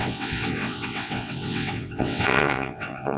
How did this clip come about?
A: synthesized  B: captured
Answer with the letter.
A